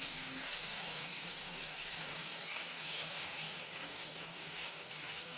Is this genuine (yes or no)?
no